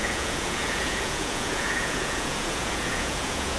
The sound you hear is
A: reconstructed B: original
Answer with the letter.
A